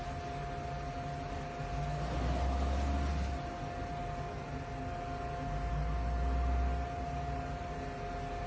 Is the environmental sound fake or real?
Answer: real